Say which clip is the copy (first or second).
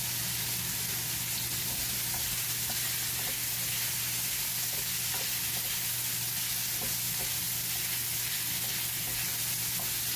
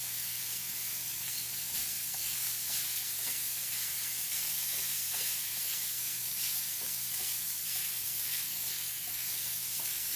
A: second